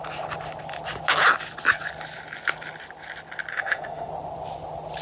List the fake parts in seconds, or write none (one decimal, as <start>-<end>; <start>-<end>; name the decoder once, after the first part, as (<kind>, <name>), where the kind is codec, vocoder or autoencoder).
3.5-4.1 (autoencoder, DAC-VAE)